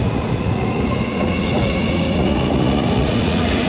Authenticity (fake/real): fake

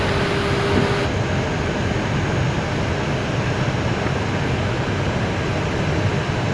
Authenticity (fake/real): real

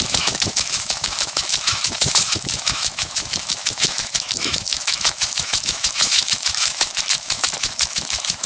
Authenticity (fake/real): fake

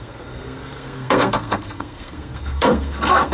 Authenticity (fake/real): fake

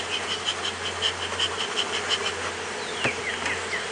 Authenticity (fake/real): real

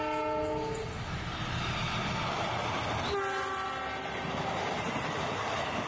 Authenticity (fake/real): real